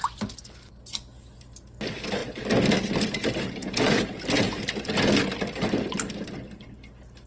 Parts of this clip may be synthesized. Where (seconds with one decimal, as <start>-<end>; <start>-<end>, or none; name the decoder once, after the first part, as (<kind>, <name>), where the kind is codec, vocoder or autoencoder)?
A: 3.6-4.5 (vocoder, Vocos)